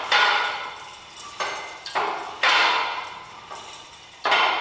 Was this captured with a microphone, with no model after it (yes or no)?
no